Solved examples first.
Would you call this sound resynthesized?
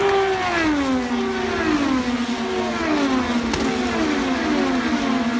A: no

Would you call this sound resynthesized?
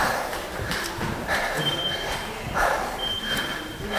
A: no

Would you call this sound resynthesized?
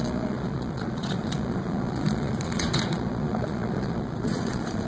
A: yes